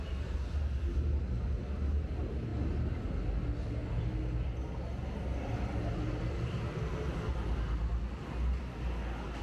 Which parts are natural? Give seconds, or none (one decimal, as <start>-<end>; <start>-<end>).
0.0-9.4